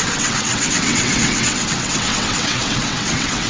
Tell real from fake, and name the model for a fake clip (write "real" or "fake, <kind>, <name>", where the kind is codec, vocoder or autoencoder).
fake, vocoder, WaveNeXt